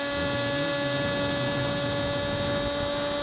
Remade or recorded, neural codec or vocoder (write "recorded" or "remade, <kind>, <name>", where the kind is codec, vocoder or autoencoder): recorded